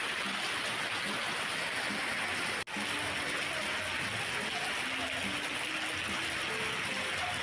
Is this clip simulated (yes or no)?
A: no